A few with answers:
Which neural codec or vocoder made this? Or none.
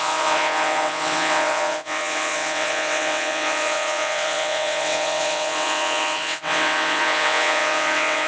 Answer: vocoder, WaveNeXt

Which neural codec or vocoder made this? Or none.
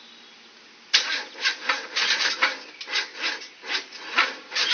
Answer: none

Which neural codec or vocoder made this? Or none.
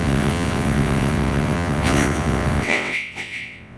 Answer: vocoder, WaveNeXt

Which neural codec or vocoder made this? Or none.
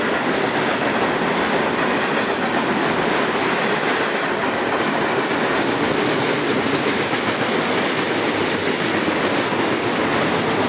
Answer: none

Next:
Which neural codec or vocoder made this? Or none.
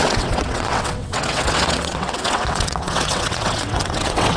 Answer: vocoder, WaveNeXt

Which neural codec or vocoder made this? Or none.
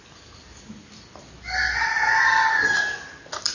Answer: none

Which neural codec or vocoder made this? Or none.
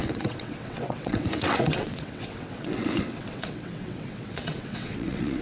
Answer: vocoder, WaveNeXt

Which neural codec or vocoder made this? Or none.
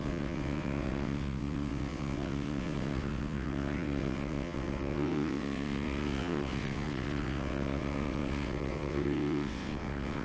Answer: vocoder, WaveNeXt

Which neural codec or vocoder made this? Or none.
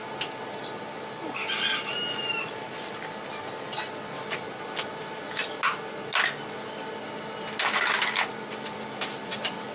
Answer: none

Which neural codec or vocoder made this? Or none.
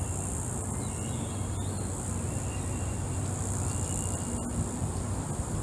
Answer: none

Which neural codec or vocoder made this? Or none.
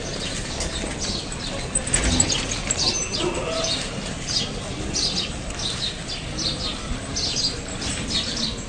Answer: none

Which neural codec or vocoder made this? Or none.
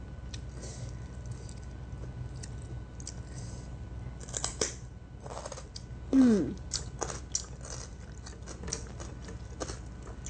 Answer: none